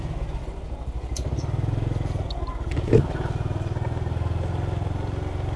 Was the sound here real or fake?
real